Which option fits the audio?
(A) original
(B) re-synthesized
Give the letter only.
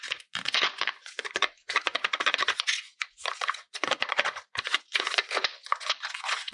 B